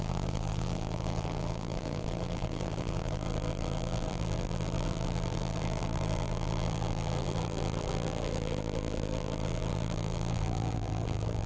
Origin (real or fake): fake